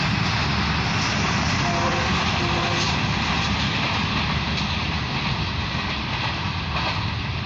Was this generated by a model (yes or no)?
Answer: no